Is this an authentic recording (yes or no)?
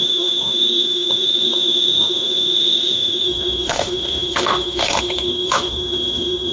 no